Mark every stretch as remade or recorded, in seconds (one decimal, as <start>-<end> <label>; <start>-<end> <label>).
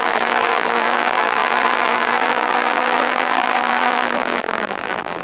0.0-5.2 remade